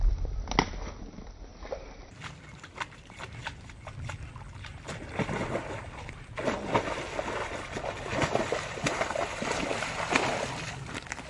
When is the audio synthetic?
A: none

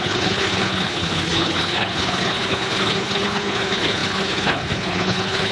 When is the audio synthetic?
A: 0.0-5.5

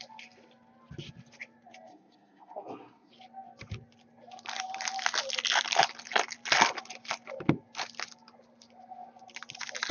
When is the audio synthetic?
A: 1.9-3.1